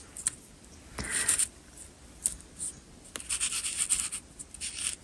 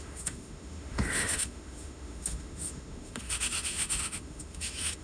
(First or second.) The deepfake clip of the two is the second